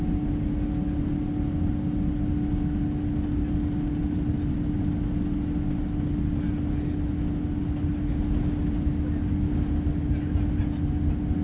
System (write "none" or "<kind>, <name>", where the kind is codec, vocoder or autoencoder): none